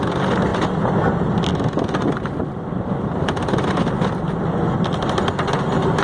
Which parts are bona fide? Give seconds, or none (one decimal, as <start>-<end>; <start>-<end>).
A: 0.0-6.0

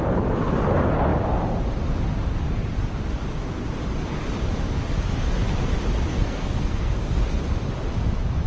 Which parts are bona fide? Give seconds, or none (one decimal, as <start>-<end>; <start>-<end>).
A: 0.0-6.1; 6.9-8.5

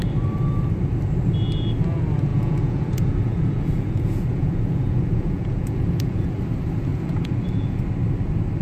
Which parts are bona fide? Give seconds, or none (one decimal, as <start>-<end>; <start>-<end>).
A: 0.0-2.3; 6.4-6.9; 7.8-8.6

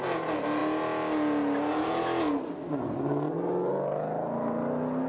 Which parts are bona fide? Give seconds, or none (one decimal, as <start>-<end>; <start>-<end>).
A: 0.0-5.1

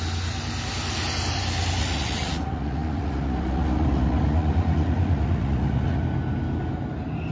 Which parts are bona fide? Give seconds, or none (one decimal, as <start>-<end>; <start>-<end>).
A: 0.0-1.8; 6.0-7.3

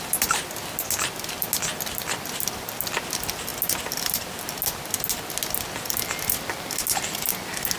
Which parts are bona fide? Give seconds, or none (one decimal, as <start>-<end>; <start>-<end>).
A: 0.0-7.8

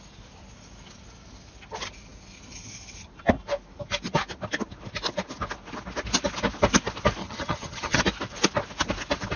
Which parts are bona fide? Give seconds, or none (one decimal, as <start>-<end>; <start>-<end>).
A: 0.0-7.2; 8.0-9.4